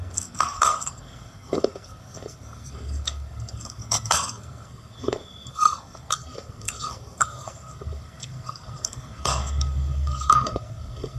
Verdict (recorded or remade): remade